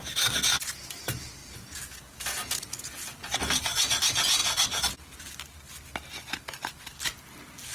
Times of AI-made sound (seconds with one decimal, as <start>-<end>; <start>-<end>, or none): 1.4-3.4